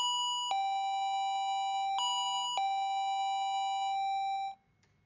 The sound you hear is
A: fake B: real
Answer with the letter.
B